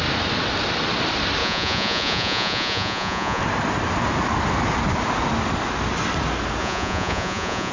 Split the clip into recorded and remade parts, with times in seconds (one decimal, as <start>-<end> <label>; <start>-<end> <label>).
0.0-1.4 recorded; 1.4-3.4 remade; 3.4-6.6 recorded; 6.6-7.7 remade